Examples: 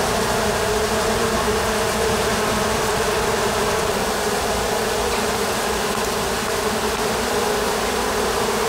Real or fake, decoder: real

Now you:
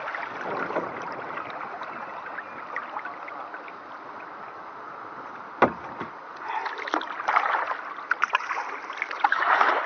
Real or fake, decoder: real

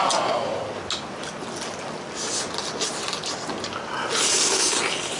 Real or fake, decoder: real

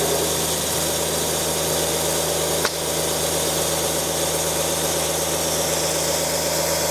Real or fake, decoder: real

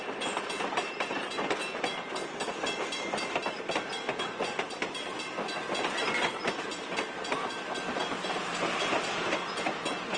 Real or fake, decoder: fake, vocoder, BigVGAN v2